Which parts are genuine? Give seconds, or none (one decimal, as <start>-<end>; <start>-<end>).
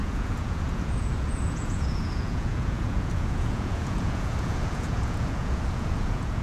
none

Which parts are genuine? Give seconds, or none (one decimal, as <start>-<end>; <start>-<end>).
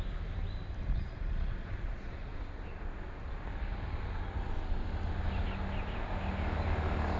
0.0-0.9; 2.3-7.2